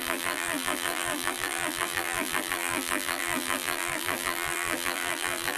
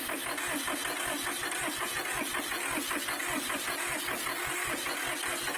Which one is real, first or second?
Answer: second